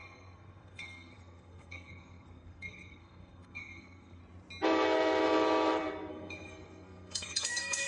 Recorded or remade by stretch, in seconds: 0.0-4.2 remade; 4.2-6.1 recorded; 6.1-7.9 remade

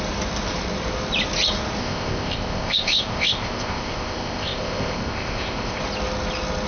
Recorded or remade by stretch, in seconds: 0.0-1.8 recorded; 1.8-5.8 remade; 5.8-6.7 recorded

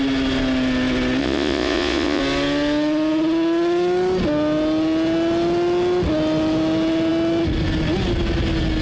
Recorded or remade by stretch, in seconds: 0.0-1.2 recorded; 1.2-2.2 remade; 2.2-8.8 recorded

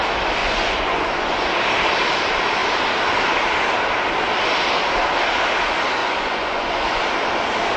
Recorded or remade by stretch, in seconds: 0.0-0.4 recorded; 0.4-1.5 remade; 1.5-6.0 recorded; 6.0-7.0 remade; 7.0-7.8 recorded

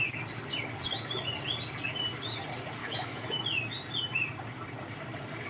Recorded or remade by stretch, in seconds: 0.0-2.8 recorded; 2.8-3.4 remade; 3.4-5.5 recorded

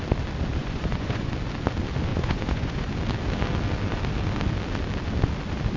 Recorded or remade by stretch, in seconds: 0.0-0.6 recorded; 0.6-1.3 remade; 1.3-2.1 recorded; 2.1-2.9 remade; 2.9-5.8 recorded